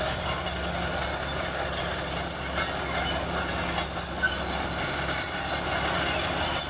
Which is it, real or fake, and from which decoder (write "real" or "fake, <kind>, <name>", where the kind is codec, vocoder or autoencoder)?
real